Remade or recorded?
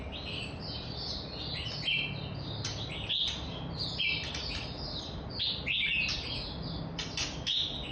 recorded